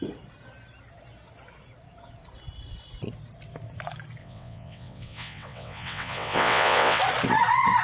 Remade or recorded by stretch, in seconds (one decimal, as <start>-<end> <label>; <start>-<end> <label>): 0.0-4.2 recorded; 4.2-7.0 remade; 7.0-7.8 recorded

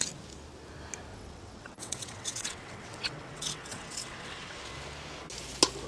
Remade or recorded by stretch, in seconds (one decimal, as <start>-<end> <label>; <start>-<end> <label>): 0.0-1.1 recorded; 1.1-4.6 remade; 4.6-5.9 recorded

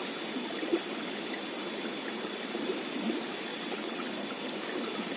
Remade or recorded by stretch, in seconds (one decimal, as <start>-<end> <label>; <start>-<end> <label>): 0.0-3.5 recorded; 3.5-4.1 remade; 4.1-5.2 recorded

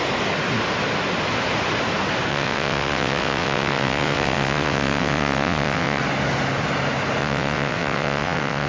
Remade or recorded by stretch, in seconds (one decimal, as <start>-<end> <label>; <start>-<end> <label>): 0.0-2.3 recorded; 2.3-6.0 remade; 6.0-7.2 recorded; 7.2-8.7 remade